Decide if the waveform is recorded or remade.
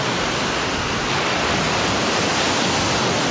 recorded